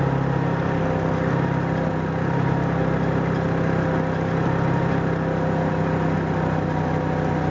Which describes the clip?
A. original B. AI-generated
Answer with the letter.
A